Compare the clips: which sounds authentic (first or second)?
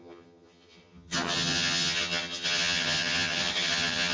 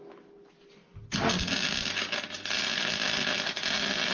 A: second